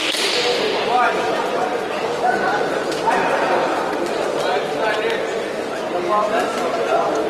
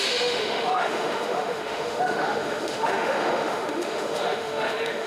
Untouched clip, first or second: first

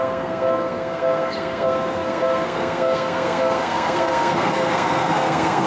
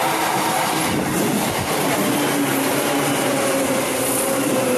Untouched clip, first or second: second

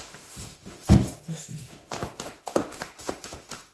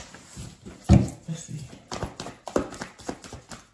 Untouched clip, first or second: second